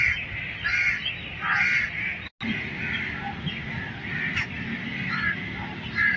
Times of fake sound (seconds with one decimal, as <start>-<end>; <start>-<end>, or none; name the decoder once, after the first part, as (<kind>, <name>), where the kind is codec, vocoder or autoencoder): none